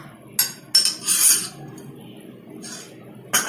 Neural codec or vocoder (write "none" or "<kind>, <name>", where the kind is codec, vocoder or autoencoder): none